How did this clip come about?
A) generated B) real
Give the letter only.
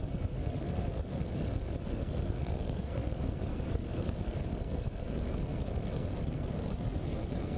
A